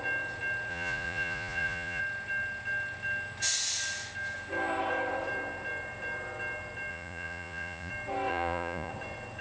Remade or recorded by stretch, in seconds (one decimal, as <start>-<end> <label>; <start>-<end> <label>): 0.0-0.7 recorded; 0.7-2.0 remade; 2.0-6.9 recorded; 6.9-7.9 remade; 7.9-8.3 recorded; 8.3-8.9 remade; 8.9-9.4 recorded